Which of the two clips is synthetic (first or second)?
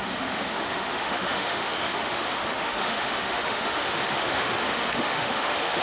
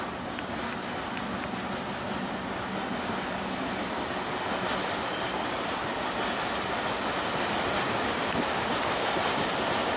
first